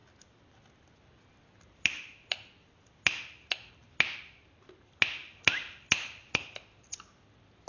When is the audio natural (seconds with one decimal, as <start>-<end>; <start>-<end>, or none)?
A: 0.0-7.7